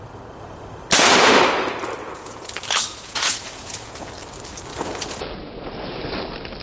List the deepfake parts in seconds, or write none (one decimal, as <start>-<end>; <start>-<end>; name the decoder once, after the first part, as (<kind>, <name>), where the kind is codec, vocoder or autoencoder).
2.0-2.5 (vocoder, Vocos); 2.9-4.1; 4.7-5.7